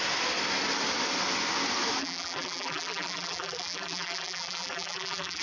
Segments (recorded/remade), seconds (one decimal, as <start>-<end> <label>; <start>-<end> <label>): 0.0-2.0 recorded; 2.0-5.4 remade